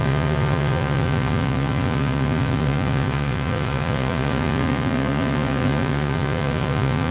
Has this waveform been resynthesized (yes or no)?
yes